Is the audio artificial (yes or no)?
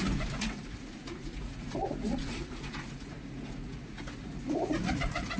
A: yes